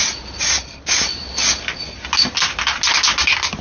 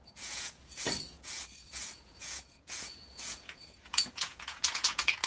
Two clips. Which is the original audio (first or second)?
first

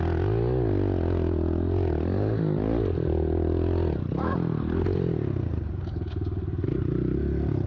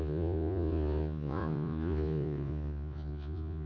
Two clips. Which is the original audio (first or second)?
first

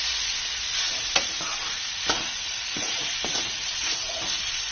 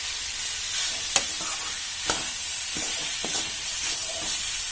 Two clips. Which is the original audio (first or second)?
second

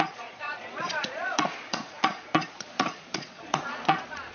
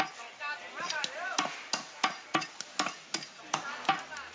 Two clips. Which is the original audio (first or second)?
second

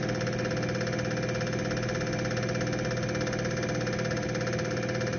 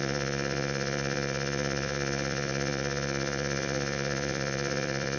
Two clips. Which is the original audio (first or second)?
first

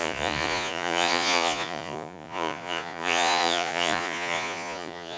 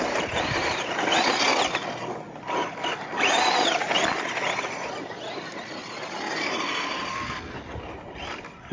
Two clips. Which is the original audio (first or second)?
second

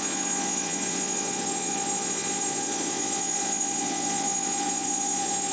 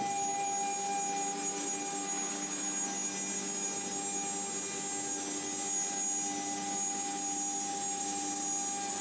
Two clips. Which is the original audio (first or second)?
second